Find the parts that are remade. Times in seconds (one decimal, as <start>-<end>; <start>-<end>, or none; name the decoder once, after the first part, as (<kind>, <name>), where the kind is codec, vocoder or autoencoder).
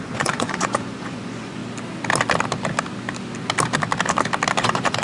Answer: 0.0-1.6 (vocoder, Vocos); 4.6-5.0